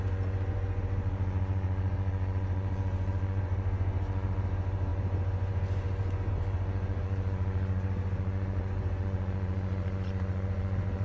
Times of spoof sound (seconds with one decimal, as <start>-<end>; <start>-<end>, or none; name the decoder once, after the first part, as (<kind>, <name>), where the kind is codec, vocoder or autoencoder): 0.0-11.0 (vocoder, Vocos)